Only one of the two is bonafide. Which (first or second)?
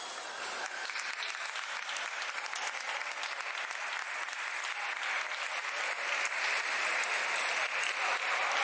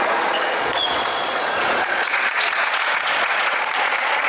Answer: first